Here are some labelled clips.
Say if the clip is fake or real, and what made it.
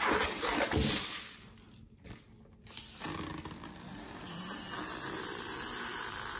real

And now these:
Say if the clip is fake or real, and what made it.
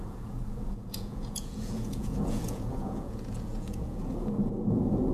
fake, vocoder, Vocos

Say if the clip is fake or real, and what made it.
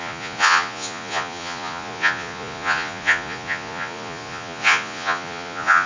fake, vocoder, Vocos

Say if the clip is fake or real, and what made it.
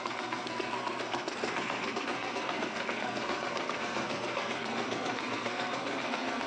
fake, codec, SNAC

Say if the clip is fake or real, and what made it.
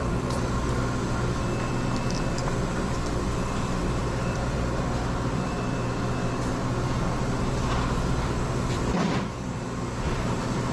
fake, vocoder, BigVGAN v2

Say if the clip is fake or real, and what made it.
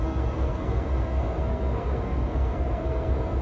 fake, codec, SNAC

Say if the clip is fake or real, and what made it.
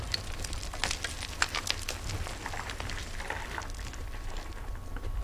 real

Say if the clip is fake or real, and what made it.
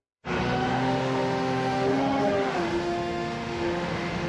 fake, autoencoder, DAC-VAE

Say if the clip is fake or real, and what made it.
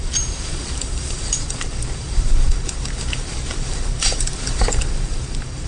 fake, vocoder, BigVGAN v2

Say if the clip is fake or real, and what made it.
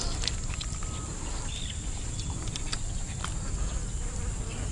real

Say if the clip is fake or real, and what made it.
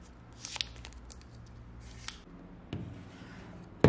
real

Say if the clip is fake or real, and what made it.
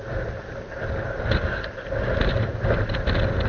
real